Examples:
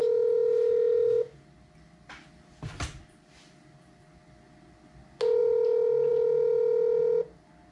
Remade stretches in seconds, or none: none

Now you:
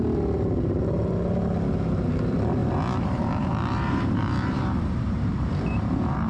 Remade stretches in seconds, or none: 2.6-6.3 (vocoder, BigVGAN v2)